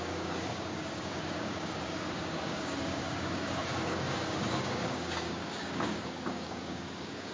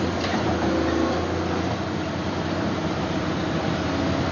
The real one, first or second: second